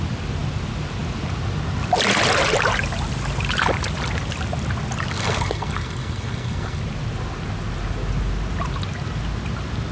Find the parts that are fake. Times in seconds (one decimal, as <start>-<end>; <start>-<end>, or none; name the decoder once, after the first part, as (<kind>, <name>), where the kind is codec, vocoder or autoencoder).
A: 5.1-6.8 (codec, SNAC)